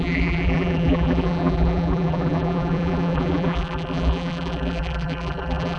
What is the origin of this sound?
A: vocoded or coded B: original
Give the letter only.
A